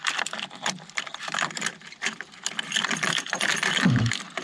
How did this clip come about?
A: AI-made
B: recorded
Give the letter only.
A